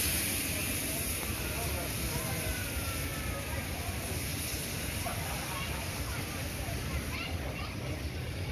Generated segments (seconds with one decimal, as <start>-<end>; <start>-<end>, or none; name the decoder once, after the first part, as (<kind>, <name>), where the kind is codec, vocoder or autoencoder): 0.0-3.1 (vocoder, BigVGAN v2); 3.6-8.5